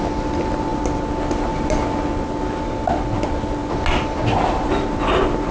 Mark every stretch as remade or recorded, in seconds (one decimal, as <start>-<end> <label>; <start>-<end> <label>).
0.0-5.5 recorded